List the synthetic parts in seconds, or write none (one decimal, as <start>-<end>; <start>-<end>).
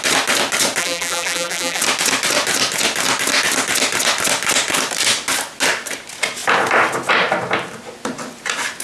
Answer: 0.8-1.8